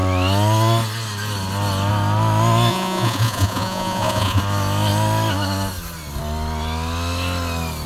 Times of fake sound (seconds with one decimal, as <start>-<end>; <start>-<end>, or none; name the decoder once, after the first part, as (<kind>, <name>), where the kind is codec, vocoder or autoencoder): 2.7-4.4 (vocoder, Vocos)